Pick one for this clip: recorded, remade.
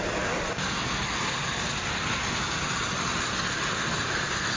recorded